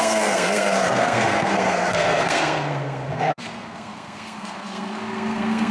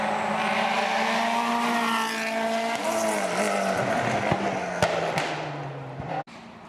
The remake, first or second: first